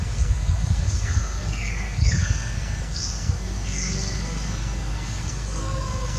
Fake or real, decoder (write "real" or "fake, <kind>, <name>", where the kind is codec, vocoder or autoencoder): fake, codec, SNAC